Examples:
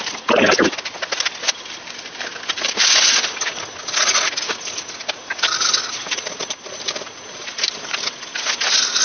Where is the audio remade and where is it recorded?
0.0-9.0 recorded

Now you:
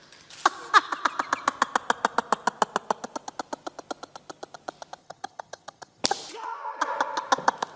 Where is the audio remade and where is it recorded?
0.0-5.0 recorded; 5.0-6.0 remade; 6.0-7.8 recorded

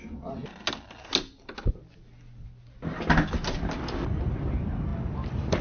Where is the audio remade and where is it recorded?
0.0-5.6 recorded

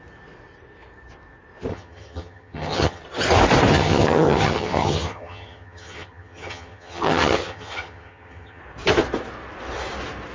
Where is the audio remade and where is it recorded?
0.0-1.7 recorded; 1.7-3.0 remade; 3.0-3.7 recorded; 3.7-8.6 remade; 8.6-10.3 recorded

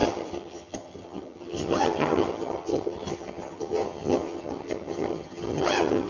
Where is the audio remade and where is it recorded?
0.0-6.1 remade